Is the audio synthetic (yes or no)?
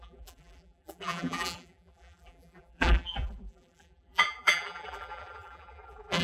yes